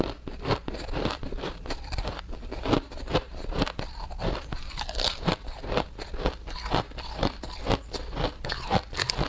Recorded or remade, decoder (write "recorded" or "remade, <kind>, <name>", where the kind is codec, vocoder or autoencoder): recorded